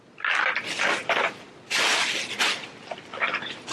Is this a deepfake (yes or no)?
no